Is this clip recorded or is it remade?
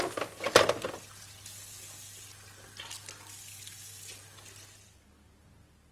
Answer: recorded